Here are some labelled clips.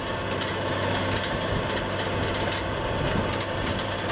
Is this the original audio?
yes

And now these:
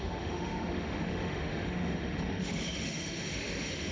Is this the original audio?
no